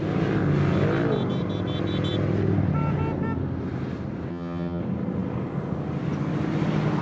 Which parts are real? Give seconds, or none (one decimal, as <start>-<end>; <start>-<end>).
0.0-4.3; 4.8-7.0